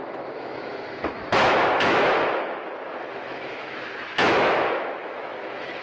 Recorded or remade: remade